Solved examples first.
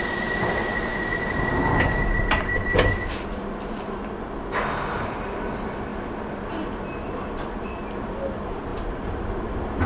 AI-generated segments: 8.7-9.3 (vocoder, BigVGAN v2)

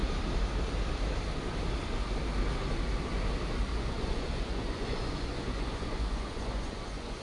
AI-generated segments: 3.7-7.2 (vocoder, Vocos)

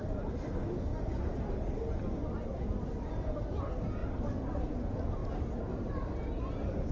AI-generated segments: 0.9-1.4 (vocoder, BigVGAN v2); 4.0-4.7; 5.2-6.9

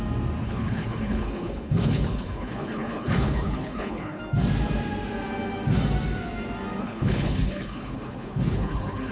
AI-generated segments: 0.4-4.2 (codec, HILCodec); 6.8-9.1

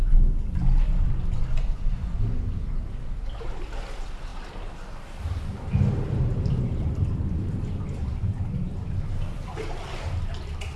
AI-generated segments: none